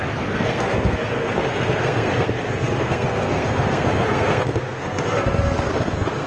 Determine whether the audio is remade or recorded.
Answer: remade